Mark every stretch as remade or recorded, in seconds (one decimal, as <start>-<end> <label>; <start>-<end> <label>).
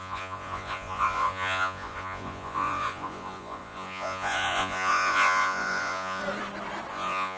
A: 0.0-6.2 remade; 6.2-6.9 recorded; 6.9-7.4 remade